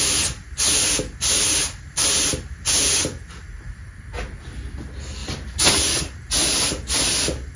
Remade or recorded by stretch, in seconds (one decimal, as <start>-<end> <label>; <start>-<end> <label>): 0.0-5.2 recorded; 5.2-5.7 remade; 5.7-7.6 recorded